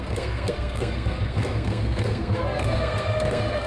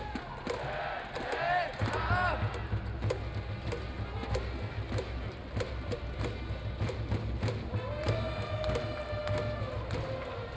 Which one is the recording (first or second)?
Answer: second